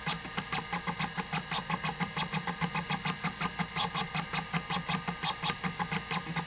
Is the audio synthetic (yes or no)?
no